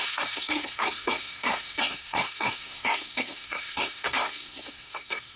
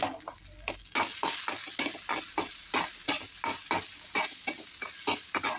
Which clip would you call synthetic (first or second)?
first